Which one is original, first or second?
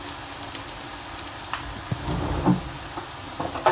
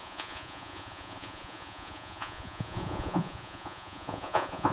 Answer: first